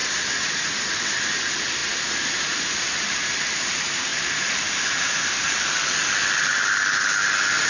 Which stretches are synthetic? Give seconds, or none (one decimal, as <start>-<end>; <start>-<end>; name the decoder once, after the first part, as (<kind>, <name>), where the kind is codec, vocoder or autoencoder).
0.0-0.6 (vocoder, BigVGAN v2); 1.8-3.4; 4.1-5.4